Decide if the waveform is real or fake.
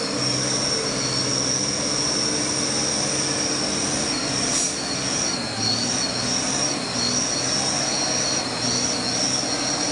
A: real